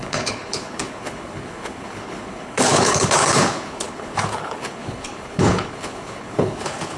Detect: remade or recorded remade